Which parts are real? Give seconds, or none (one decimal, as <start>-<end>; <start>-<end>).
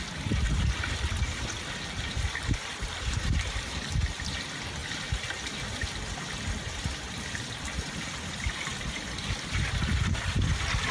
0.0-10.9